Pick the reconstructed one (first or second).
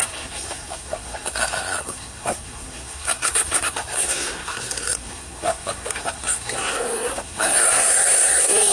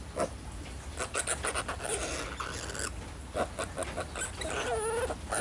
first